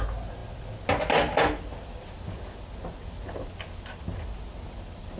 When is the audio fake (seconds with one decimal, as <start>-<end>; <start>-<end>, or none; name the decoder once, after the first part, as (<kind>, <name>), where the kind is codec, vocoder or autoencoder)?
none